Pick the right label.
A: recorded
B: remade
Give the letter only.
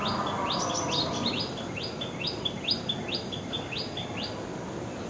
A